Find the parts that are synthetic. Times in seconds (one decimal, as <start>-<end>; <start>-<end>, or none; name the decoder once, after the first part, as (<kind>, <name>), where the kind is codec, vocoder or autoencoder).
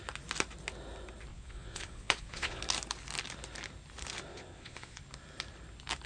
1.3-2.6 (vocoder, Vocos); 4.3-5.0